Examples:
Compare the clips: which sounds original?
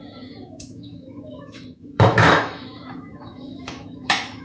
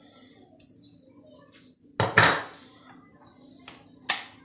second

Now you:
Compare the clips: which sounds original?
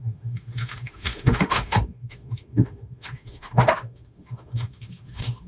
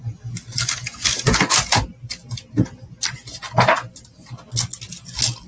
second